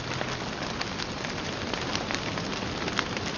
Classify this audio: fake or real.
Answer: real